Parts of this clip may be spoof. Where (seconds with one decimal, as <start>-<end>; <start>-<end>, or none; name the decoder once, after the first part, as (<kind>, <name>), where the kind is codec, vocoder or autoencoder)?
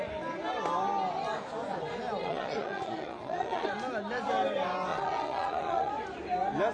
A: 2.2-3.7 (vocoder, Vocos); 4.9-5.9